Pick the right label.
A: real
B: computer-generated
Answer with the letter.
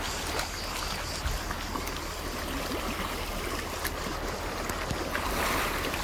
A